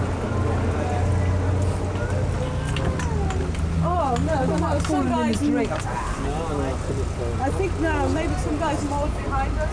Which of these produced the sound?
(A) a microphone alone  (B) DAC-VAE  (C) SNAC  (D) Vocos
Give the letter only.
A